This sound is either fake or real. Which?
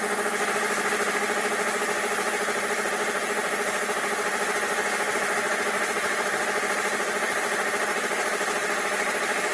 real